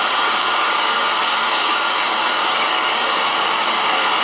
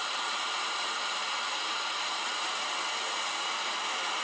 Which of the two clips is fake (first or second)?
first